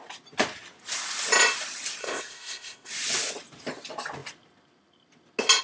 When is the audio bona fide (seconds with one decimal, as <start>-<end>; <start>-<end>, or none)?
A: 0.0-2.0; 2.9-5.6